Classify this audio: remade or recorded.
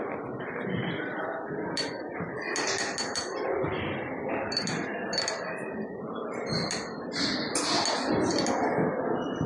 recorded